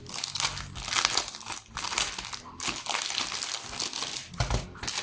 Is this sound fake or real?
real